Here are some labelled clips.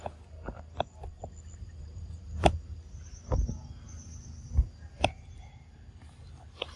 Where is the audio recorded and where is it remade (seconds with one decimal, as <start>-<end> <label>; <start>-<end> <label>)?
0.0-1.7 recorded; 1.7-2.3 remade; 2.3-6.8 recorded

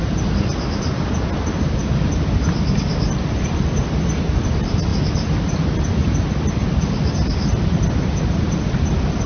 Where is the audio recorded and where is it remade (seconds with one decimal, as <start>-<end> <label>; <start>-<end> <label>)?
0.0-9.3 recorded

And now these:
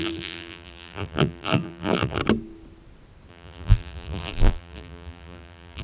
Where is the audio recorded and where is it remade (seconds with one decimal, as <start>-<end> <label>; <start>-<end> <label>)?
0.0-2.2 remade; 2.2-3.3 recorded; 3.3-5.8 remade

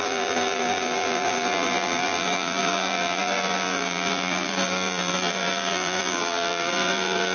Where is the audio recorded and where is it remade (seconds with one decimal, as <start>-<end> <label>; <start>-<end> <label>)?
0.0-7.3 remade

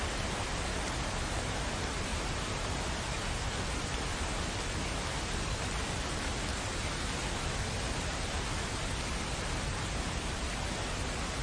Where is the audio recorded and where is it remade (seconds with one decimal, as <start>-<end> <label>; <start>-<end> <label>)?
0.0-6.5 recorded; 6.5-7.5 remade; 7.5-9.7 recorded; 9.7-10.6 remade; 10.6-11.4 recorded

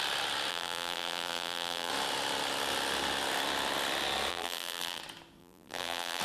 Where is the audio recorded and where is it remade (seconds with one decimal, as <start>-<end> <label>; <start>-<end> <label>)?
0.0-0.5 recorded; 0.5-1.9 remade; 1.9-4.3 recorded; 4.3-5.0 remade; 5.0-5.4 recorded; 5.4-6.2 remade

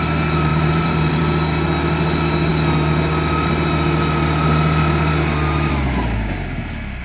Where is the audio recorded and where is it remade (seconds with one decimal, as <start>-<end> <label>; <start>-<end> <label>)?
0.0-0.5 recorded; 0.5-1.2 remade; 1.2-7.0 recorded